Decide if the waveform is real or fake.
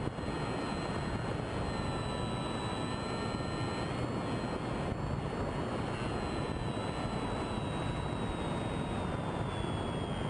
real